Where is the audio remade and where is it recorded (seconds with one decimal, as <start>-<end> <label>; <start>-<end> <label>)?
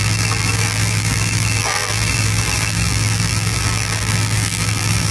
0.0-5.1 remade